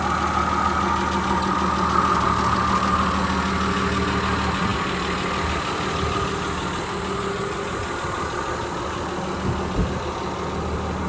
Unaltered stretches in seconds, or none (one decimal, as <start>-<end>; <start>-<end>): 0.0-11.1